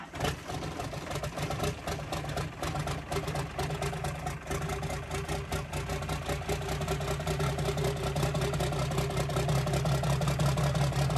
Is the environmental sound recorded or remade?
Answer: recorded